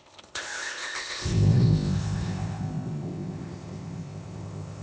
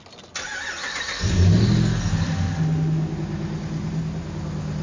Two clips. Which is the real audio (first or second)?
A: second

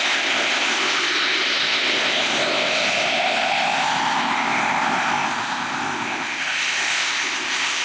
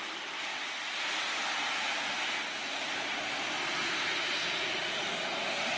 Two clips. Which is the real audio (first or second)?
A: second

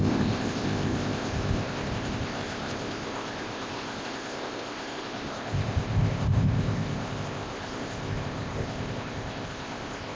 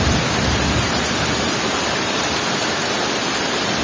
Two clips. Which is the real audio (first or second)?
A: second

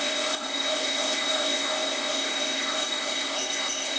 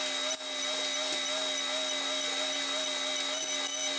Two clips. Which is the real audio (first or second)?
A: second